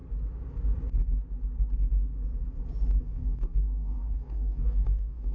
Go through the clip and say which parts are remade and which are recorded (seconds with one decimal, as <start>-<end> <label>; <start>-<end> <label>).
0.0-3.0 recorded; 3.0-5.3 remade